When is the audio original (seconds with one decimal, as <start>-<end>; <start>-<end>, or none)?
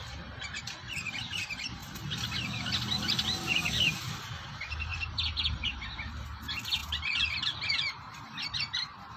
0.0-4.9; 5.8-6.8; 7.6-9.2